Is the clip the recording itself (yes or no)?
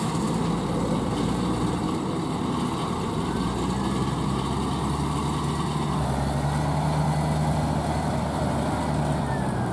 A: yes